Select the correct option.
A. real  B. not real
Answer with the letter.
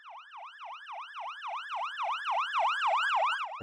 A